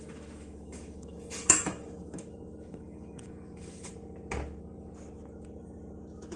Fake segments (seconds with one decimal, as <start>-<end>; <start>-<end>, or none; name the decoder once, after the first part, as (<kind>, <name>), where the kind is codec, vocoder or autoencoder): 0.0-3.9 (autoencoder, DAC-VAE)